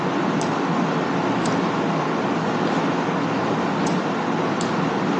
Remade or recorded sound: recorded